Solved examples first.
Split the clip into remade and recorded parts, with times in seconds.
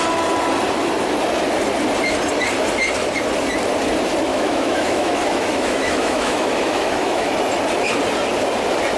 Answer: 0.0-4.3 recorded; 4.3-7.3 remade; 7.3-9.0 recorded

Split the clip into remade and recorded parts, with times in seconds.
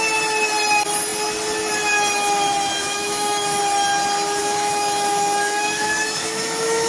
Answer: 0.0-2.8 recorded; 2.8-3.6 remade; 3.6-4.4 recorded; 4.4-6.9 remade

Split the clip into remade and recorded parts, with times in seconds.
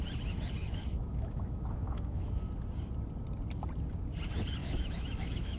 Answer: 0.0-0.6 recorded; 0.6-2.3 remade; 2.3-4.6 recorded; 4.6-5.6 remade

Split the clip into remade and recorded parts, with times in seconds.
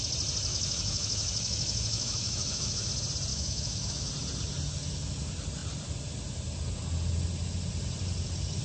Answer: 0.0-0.5 recorded; 0.5-2.9 remade; 2.9-3.3 recorded; 3.3-4.1 remade; 4.1-8.6 recorded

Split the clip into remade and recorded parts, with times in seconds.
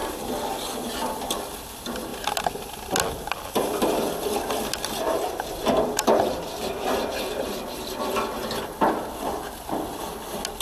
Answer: 0.0-10.6 recorded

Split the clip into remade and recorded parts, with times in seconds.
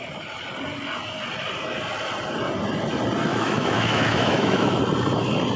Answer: 0.0-3.3 recorded; 3.3-4.8 remade; 4.8-5.6 recorded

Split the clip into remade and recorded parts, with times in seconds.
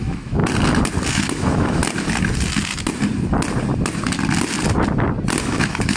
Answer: 0.0-0.4 remade; 0.4-1.1 recorded; 1.1-1.8 remade; 1.8-5.4 recorded; 5.4-6.0 remade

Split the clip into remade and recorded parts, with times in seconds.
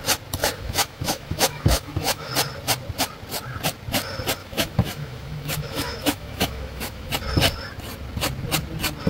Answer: 0.0-0.4 recorded; 0.4-2.3 remade; 2.3-4.4 recorded; 4.4-7.1 remade; 7.1-9.1 recorded